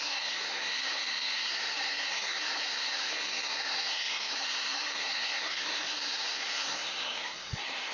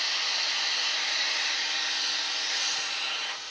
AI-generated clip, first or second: first